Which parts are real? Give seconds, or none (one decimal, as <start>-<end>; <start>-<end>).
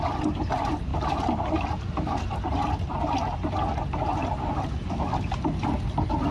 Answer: 0.0-6.3